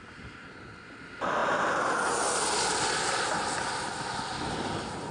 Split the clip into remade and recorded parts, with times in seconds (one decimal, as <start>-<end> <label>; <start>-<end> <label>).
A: 0.0-5.1 recorded